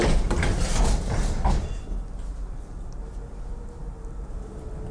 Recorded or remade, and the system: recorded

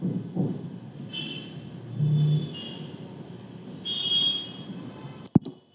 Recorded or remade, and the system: recorded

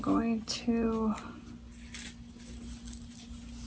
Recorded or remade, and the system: recorded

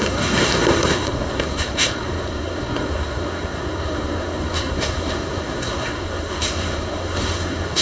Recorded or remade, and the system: remade, codec, SNAC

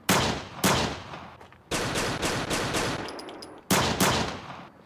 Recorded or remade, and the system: recorded